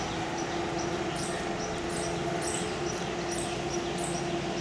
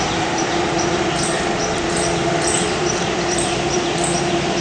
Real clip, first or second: first